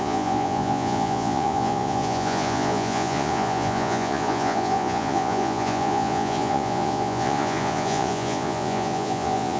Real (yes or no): no